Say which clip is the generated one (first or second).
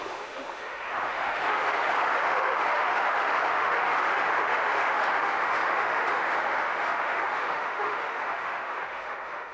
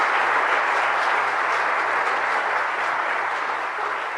first